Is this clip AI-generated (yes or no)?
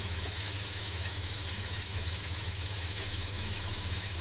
yes